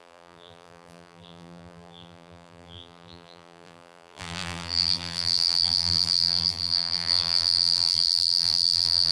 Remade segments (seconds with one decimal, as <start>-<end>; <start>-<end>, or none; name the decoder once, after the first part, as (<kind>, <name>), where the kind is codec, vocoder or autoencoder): 0.0-9.1 (vocoder, BigVGAN v2)